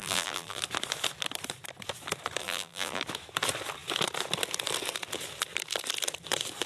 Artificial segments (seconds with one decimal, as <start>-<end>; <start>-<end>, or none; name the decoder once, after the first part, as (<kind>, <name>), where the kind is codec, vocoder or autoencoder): 0.0-0.6 (vocoder, BigVGAN v2); 2.4-3.0